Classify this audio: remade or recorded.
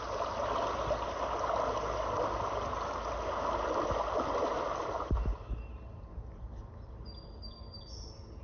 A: recorded